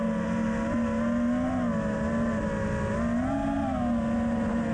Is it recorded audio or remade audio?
recorded